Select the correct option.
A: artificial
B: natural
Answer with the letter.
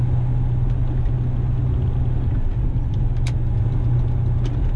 B